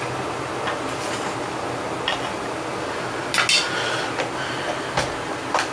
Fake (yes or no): no